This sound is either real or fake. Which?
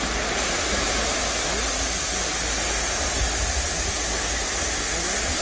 real